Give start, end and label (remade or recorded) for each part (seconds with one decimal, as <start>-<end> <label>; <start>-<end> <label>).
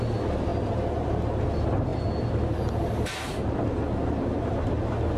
0.0-5.2 recorded